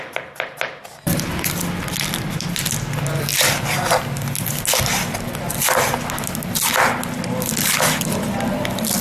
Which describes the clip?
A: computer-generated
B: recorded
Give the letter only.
B